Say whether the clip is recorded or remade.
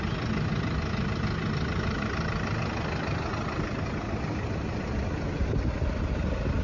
recorded